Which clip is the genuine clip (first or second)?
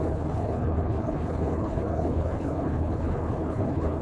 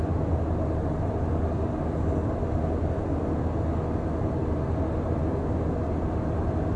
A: second